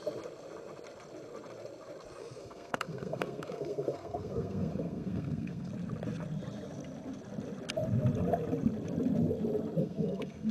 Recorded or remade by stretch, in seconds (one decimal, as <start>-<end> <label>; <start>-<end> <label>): 0.0-2.2 recorded; 2.2-5.7 remade; 5.7-9.8 recorded; 9.8-10.5 remade